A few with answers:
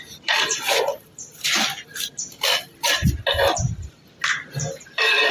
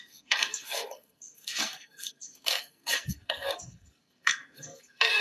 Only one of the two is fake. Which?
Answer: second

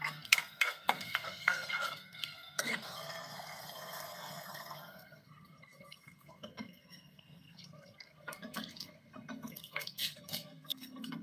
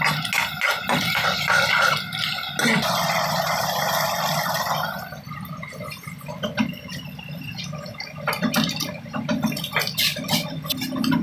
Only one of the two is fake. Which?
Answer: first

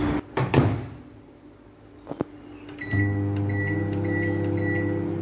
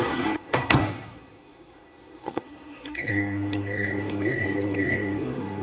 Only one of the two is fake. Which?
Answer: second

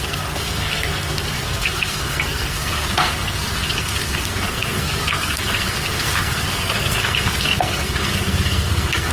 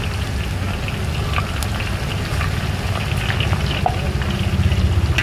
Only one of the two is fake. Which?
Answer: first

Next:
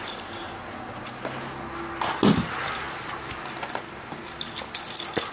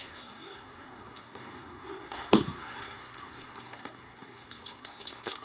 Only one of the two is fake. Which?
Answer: second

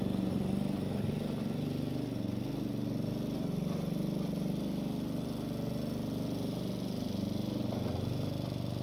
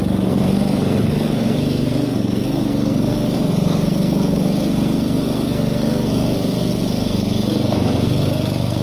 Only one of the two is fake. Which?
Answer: second